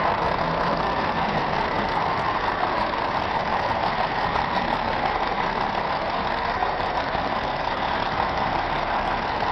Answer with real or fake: fake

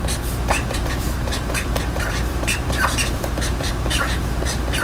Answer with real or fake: fake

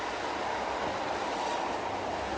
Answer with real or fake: real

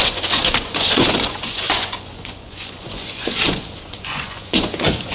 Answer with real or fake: fake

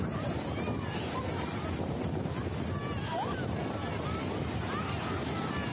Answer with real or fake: real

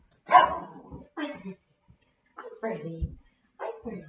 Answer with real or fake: real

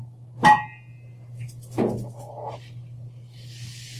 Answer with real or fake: real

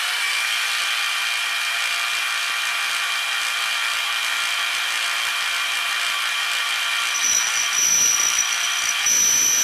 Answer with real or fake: real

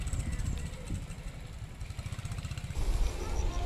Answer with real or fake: real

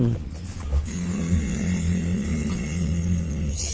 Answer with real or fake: fake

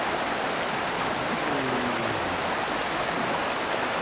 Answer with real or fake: real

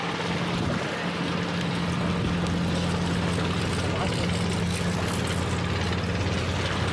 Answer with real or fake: real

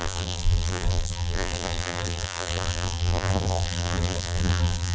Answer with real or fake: fake